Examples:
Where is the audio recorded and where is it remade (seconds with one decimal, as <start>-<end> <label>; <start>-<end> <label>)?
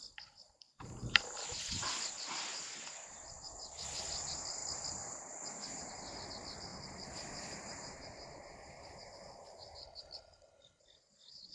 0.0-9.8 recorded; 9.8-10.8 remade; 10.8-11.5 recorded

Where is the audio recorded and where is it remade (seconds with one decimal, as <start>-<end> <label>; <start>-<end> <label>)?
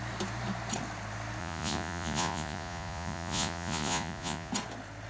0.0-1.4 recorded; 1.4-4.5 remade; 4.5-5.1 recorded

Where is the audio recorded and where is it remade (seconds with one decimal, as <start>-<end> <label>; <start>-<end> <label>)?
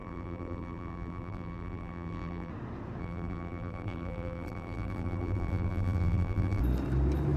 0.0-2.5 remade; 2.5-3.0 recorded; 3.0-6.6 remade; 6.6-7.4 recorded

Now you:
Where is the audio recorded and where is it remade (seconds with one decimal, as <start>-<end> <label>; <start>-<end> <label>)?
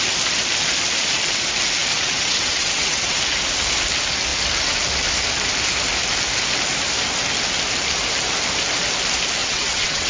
0.0-1.9 recorded; 1.9-3.2 remade; 3.2-9.4 recorded; 9.4-10.1 remade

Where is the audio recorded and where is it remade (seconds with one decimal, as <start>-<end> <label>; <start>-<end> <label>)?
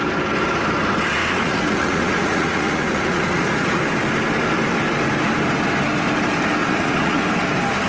0.0-1.2 recorded; 1.2-3.8 remade; 3.8-6.6 recorded; 6.6-7.2 remade; 7.2-7.9 recorded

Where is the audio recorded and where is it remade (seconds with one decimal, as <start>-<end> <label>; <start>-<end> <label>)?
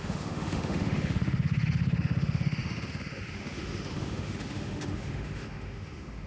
0.0-6.3 remade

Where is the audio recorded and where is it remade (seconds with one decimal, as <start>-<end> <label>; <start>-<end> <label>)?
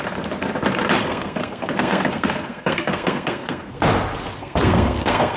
0.0-1.0 recorded; 1.0-3.8 remade; 3.8-4.4 recorded; 4.4-5.4 remade